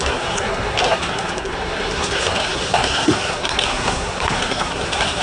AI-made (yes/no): yes